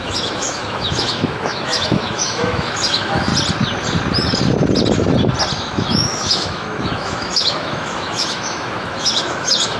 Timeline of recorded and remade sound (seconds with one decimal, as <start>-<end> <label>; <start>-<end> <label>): 0.0-3.3 remade; 3.3-5.6 recorded; 5.6-9.8 remade